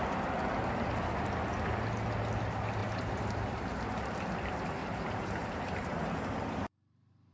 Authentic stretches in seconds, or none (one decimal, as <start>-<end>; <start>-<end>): 0.0-2.8; 3.8-4.8